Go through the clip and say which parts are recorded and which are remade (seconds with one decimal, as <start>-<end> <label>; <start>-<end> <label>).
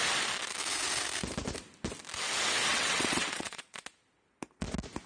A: 0.0-2.7 recorded; 2.7-3.8 remade; 3.8-5.1 recorded